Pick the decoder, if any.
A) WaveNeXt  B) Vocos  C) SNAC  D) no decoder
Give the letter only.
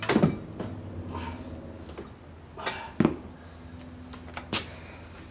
D